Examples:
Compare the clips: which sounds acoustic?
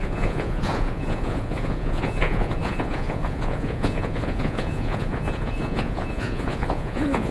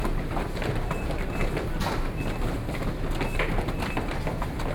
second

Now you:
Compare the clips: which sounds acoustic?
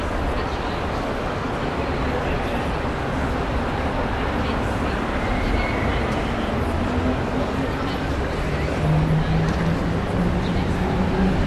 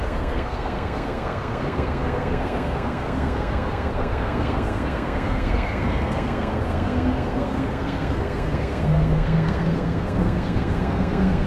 first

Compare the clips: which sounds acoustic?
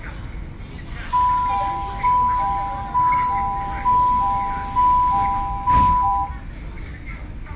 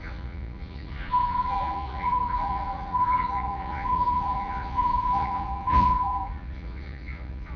first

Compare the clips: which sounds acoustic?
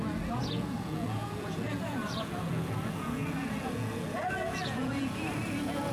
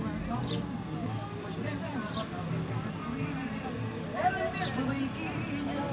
second